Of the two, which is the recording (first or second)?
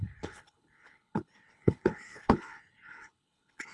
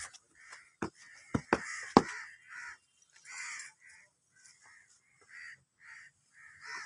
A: second